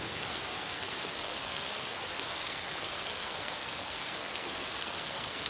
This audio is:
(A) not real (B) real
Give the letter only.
A